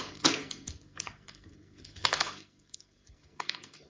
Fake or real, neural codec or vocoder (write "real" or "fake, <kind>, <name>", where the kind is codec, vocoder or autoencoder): fake, codec, SNAC